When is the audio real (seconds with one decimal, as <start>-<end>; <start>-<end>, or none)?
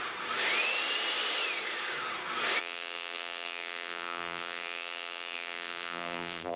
0.0-2.6